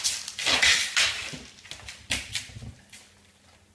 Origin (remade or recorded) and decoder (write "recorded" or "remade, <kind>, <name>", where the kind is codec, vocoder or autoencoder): recorded